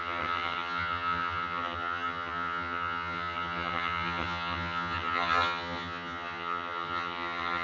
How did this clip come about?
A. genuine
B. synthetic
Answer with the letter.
B